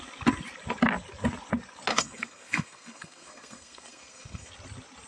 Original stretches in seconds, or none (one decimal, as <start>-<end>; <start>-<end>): 0.0-1.9; 4.5-5.1